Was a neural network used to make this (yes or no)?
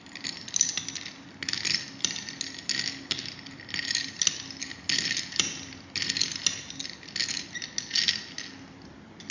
no